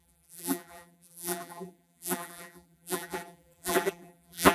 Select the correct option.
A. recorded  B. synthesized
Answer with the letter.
B